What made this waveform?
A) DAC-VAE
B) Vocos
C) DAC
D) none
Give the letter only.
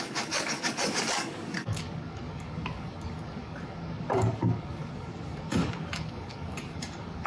C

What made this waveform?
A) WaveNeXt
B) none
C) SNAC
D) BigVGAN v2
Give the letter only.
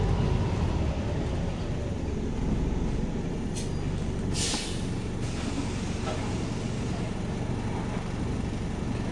B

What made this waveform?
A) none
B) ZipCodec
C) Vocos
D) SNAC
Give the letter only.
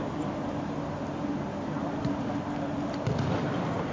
A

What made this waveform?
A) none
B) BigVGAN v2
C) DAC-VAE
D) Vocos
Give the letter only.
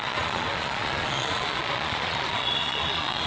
D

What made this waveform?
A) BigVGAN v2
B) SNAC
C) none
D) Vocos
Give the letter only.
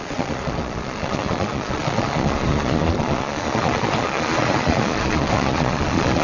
D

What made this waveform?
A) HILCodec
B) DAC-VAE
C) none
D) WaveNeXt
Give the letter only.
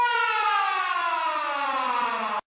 C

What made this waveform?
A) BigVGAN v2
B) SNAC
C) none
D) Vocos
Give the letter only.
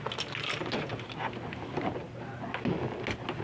C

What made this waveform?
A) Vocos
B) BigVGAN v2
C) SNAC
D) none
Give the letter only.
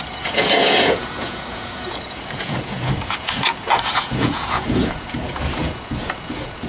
A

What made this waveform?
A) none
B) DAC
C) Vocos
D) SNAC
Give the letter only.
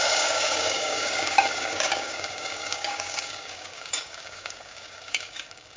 B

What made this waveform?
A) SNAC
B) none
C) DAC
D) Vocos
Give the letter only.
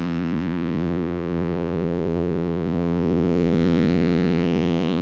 D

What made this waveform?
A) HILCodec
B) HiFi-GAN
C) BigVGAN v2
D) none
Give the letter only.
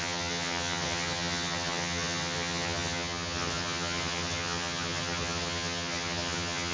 B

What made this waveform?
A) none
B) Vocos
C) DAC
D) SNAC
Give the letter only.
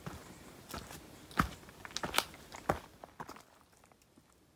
A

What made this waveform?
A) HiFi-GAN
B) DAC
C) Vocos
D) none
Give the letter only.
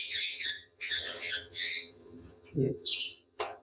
A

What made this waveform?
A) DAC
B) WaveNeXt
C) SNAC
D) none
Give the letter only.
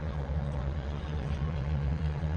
B